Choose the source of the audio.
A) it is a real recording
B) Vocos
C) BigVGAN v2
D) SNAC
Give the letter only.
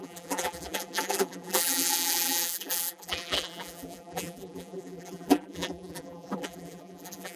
C